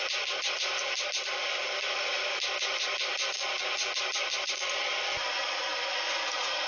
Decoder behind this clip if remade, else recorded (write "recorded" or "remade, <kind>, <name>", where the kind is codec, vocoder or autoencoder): recorded